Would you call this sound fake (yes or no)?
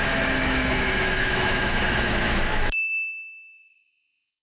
yes